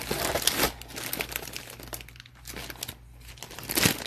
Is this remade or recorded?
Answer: recorded